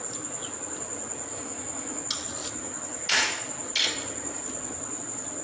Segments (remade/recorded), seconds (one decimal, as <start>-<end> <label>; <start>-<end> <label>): 0.0-1.3 recorded; 1.3-2.0 remade; 2.0-5.4 recorded